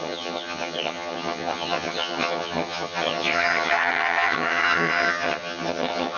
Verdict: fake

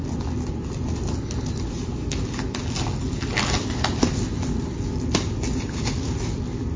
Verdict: real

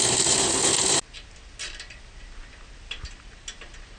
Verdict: real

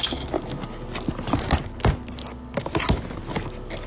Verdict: real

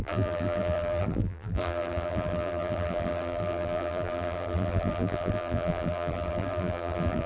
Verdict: fake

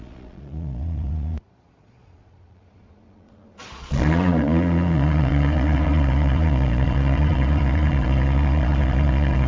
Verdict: fake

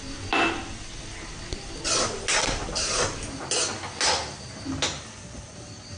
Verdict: real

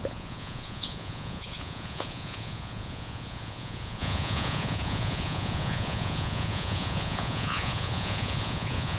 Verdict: fake